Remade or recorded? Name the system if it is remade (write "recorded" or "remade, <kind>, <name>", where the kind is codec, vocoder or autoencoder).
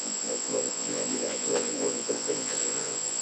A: remade, vocoder, Vocos